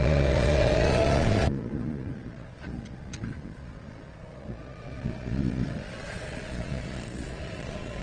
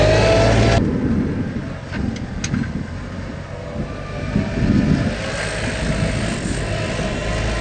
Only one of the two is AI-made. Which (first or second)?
first